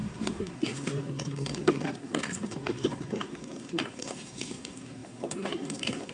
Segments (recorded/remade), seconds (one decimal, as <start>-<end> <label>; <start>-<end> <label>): 0.0-6.1 remade